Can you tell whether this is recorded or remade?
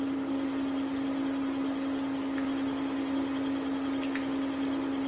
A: recorded